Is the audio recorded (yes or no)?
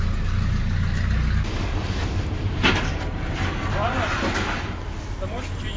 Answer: yes